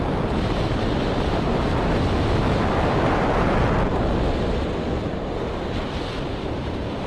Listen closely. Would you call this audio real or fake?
real